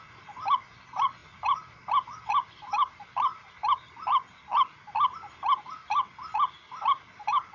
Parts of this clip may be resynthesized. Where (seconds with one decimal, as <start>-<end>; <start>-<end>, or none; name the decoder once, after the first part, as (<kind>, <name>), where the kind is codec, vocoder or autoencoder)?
none